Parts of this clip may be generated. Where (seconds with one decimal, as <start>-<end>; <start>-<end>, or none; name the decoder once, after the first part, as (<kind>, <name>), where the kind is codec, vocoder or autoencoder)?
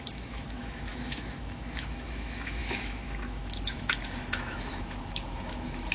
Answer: 0.0-5.9 (autoencoder, DAC-VAE)